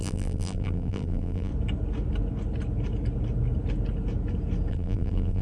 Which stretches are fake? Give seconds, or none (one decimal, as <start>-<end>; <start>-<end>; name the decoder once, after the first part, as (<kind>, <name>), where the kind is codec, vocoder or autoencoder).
0.0-1.5 (vocoder, BigVGAN v2); 4.7-5.4